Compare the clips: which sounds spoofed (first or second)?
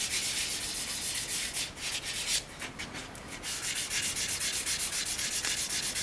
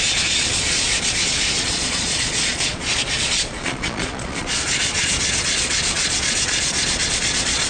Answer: second